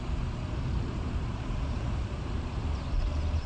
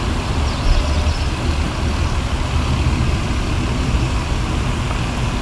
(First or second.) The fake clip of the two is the first